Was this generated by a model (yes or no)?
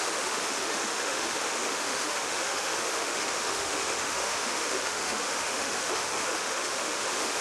yes